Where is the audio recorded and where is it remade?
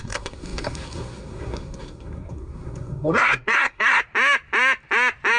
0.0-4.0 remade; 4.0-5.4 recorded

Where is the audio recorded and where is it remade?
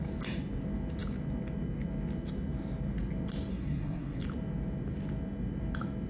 0.0-3.5 recorded; 3.5-4.2 remade; 4.2-6.1 recorded